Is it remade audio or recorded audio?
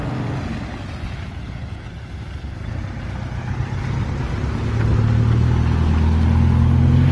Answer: recorded